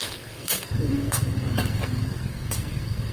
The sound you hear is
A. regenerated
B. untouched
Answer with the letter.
A